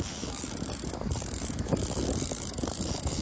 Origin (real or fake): fake